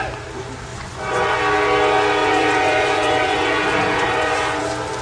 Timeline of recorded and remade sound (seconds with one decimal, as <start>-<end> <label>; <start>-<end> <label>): 0.0-0.7 recorded; 0.7-1.4 remade; 1.4-2.2 recorded; 2.2-4.6 remade; 4.6-5.0 recorded